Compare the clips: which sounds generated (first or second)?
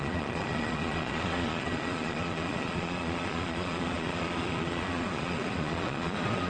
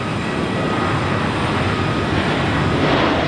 first